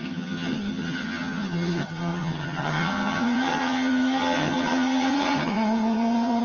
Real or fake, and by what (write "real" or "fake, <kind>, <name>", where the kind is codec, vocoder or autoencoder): fake, vocoder, HiFi-GAN